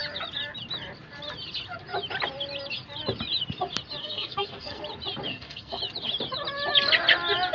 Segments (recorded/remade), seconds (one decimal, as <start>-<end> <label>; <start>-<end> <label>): 0.0-4.0 recorded; 4.0-4.8 remade; 4.8-5.3 recorded; 5.3-5.8 remade; 5.8-7.5 recorded